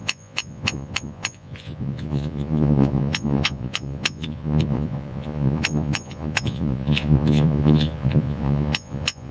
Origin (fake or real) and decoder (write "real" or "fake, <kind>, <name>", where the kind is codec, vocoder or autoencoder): fake, vocoder, Vocos